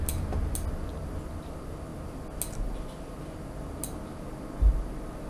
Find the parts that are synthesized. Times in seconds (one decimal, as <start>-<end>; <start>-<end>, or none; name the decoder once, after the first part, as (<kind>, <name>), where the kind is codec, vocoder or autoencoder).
none